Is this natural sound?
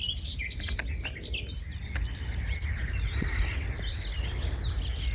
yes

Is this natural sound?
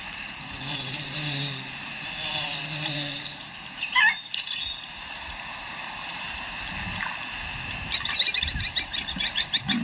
no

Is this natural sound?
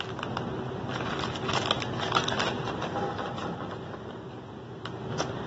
yes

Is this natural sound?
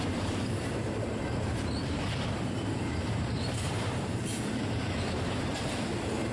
no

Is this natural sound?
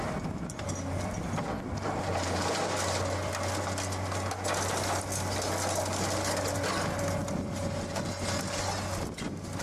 yes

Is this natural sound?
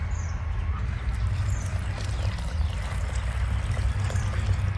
yes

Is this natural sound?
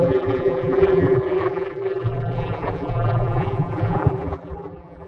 no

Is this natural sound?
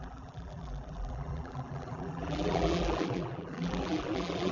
no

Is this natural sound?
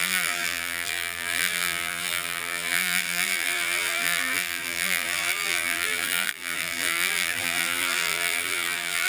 no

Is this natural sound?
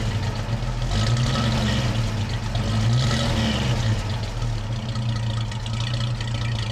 yes